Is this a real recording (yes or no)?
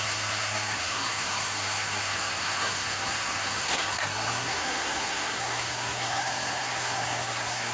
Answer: no